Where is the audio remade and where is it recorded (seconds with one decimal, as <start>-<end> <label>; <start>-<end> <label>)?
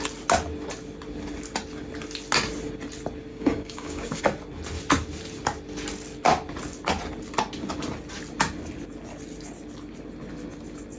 0.0-3.3 recorded; 3.3-4.2 remade; 4.2-11.0 recorded